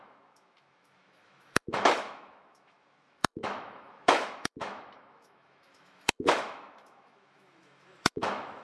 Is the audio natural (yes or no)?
no